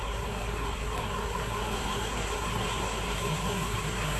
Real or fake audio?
fake